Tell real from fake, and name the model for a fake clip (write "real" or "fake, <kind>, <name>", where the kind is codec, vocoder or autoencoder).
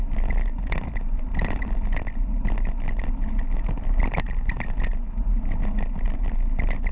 real